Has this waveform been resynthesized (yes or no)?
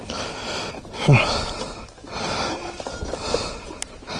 no